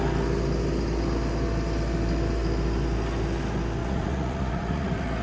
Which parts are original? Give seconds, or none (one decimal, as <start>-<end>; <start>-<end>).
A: 0.0-3.8